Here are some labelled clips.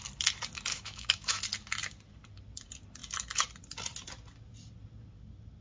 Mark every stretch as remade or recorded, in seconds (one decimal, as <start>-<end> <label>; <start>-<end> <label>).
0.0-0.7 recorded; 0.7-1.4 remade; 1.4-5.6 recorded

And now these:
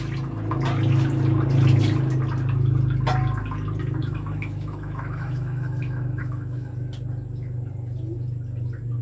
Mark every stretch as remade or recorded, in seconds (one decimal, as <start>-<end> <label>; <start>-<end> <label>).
0.0-4.0 recorded; 4.0-6.7 remade; 6.7-9.0 recorded

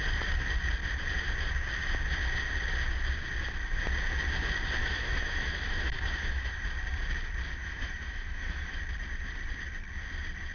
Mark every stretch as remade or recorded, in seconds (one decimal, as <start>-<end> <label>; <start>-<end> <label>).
0.0-4.8 recorded; 4.8-6.6 remade; 6.6-7.6 recorded; 7.6-8.8 remade; 8.8-10.5 recorded

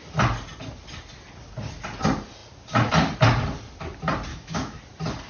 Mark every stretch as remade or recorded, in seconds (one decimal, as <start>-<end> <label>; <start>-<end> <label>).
0.0-4.3 recorded; 4.3-4.8 remade; 4.8-5.3 recorded

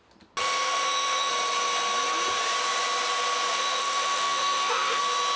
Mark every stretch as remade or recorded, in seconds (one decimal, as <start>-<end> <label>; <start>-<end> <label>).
0.0-0.4 recorded; 0.4-1.3 remade; 1.3-3.5 recorded; 3.5-5.0 remade; 5.0-5.4 recorded

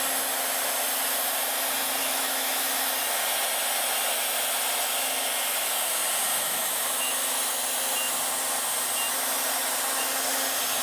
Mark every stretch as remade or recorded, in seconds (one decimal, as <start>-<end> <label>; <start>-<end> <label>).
0.0-2.0 recorded; 2.0-2.8 remade; 2.8-6.3 recorded; 6.3-7.5 remade; 7.5-10.8 recorded

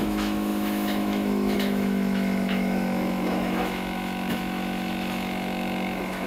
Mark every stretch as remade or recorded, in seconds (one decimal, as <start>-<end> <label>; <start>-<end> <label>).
0.0-6.3 remade